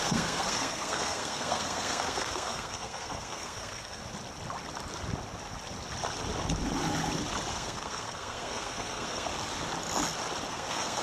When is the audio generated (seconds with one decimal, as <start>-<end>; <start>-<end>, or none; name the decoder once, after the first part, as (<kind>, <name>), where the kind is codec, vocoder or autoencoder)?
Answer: 0.0-4.0 (codec, SNAC); 7.5-9.3; 10.5-11.0

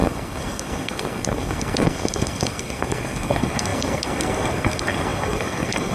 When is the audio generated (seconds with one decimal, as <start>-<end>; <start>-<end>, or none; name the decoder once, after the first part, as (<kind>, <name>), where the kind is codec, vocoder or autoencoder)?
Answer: 0.0-5.9 (codec, SNAC)